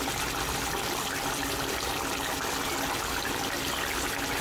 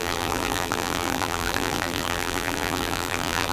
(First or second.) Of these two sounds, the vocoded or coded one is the second